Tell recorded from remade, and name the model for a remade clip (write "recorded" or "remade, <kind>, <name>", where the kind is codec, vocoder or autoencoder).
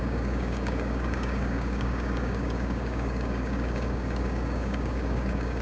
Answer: remade, codec, DAC